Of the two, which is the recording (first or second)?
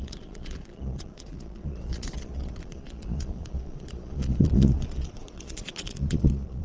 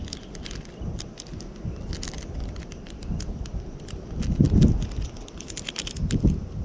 second